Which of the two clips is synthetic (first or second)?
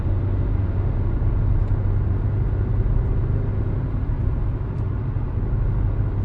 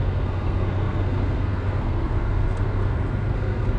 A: second